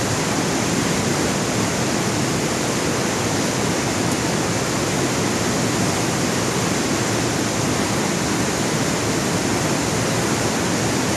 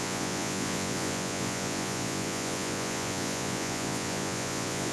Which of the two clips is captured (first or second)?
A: first